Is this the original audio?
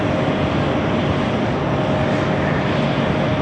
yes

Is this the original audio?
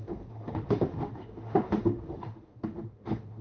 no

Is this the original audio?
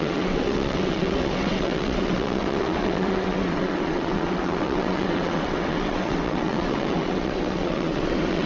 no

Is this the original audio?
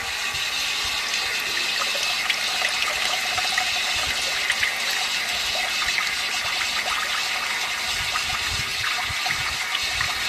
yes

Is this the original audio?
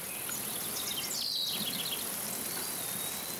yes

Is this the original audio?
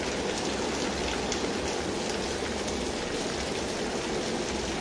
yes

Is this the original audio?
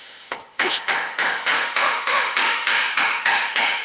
no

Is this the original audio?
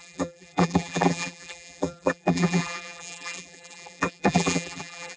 no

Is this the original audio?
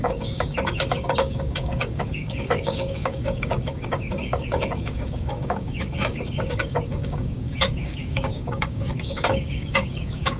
no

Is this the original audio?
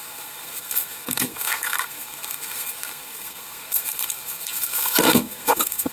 no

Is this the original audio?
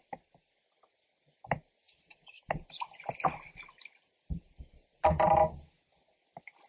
yes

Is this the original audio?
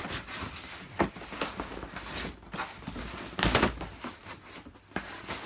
yes